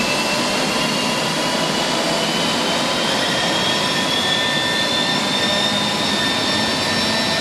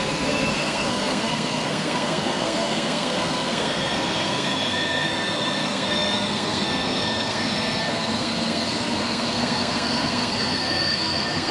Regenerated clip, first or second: second